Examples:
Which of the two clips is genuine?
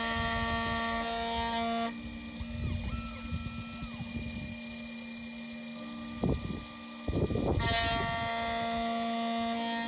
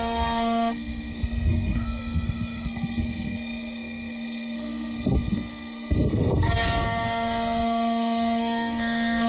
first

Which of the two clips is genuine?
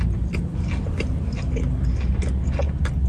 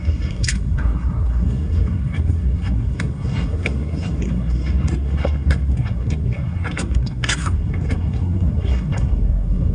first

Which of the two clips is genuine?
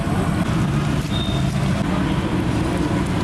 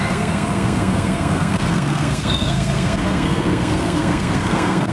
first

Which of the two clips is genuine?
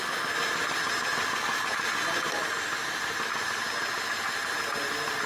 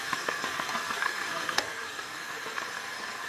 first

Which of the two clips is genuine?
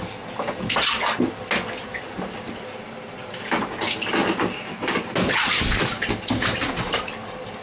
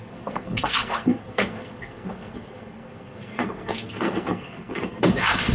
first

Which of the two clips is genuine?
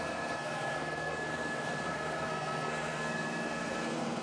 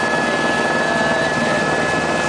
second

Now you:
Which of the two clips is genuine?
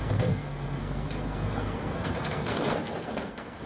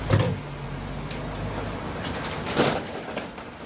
second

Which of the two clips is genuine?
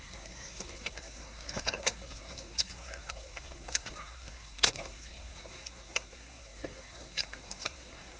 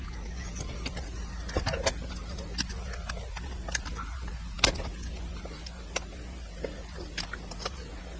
second